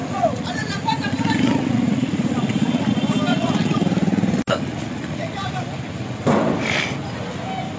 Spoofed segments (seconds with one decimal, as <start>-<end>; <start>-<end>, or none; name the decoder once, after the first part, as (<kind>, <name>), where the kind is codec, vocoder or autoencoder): 0.0-2.9 (vocoder, Vocos); 3.3-5.5